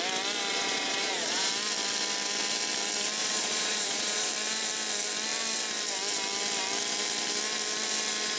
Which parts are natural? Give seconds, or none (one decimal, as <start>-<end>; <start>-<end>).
0.0-0.5; 1.5-3.2; 4.3-8.4